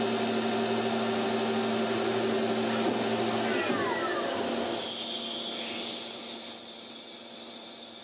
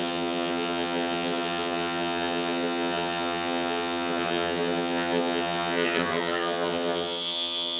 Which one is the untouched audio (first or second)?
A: first